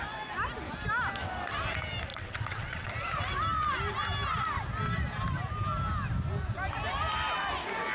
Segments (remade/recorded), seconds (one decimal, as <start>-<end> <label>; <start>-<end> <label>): 0.0-2.1 recorded; 2.1-2.9 remade; 2.9-7.9 recorded